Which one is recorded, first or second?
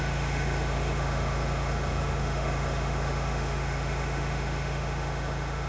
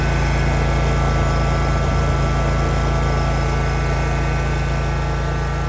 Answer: second